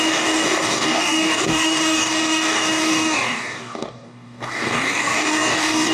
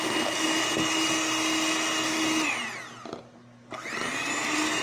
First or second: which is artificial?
first